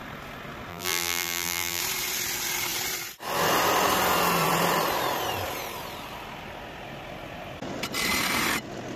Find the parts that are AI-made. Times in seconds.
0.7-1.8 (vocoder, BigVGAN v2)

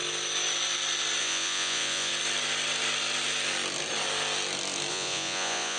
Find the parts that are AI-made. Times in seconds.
1.2-2.1 (vocoder, Vocos); 4.9-5.8

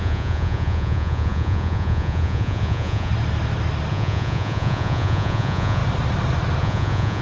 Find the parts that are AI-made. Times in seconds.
0.0-3.1 (vocoder, Vocos); 3.9-5.8; 6.6-7.2

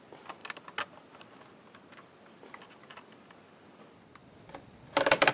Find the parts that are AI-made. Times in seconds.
none

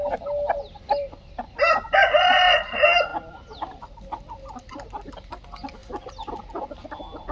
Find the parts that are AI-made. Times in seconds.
none

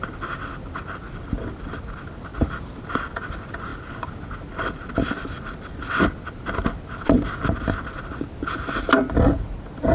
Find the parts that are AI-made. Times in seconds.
none

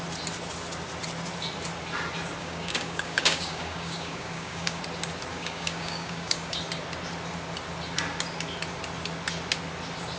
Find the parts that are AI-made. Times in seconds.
2.4-4.8 (codec, DAC); 5.3-6.6

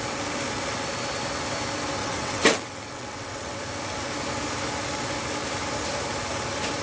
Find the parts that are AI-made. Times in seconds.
2.0-3.6 (vocoder, WaveNeXt)